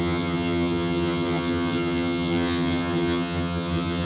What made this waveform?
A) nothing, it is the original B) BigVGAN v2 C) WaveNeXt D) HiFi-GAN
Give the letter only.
D